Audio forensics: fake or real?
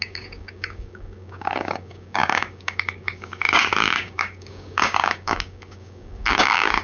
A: fake